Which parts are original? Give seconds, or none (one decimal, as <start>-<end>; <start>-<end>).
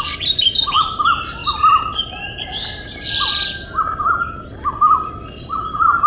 0.0-6.1